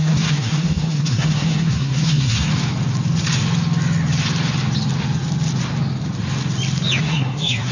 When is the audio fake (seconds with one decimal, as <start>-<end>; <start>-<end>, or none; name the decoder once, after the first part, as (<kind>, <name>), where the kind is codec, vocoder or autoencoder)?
0.0-2.5 (codec, SNAC); 7.0-7.7